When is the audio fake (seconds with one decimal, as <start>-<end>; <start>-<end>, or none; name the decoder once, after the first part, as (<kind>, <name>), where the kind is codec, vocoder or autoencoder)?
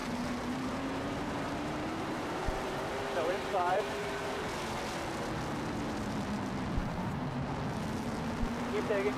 0.0-4.4 (vocoder, BigVGAN v2); 6.8-7.5